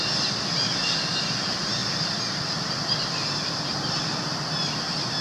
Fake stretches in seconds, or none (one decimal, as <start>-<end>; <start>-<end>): none